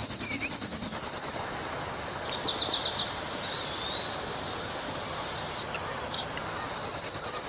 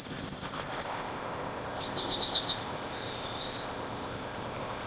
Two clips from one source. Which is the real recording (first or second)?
first